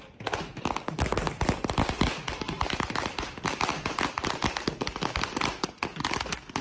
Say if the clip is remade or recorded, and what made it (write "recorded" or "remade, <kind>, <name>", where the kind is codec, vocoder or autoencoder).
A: recorded